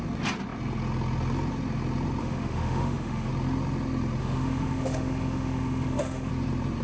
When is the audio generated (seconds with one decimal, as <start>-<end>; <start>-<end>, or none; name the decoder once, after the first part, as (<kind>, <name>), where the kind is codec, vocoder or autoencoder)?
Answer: 2.2-3.3 (autoencoder, DAC-VAE); 4.2-6.3